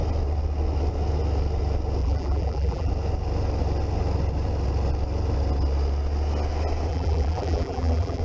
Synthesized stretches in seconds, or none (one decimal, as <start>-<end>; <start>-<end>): 2.0-2.9; 6.9-8.2